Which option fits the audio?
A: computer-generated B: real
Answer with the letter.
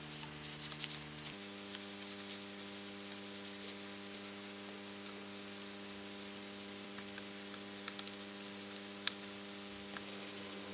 B